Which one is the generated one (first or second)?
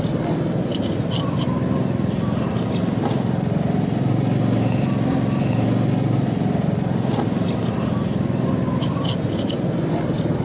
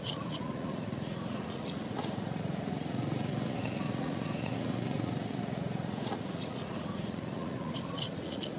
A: second